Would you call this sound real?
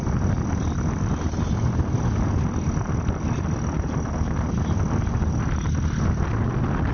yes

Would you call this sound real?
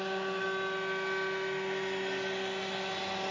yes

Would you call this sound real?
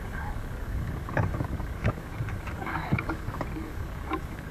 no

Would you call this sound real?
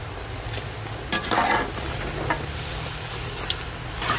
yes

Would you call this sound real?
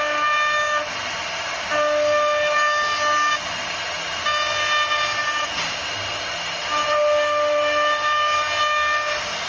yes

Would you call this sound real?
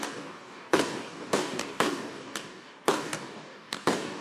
no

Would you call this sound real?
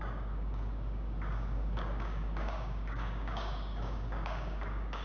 no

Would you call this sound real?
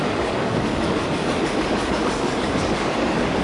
no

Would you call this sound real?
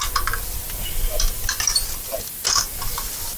yes